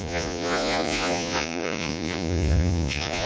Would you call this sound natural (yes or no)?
no